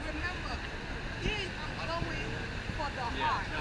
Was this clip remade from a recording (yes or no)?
no